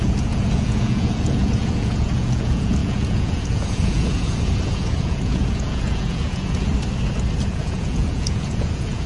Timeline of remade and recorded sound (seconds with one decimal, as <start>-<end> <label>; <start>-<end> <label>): 0.0-6.7 remade; 6.7-7.5 recorded; 7.5-9.1 remade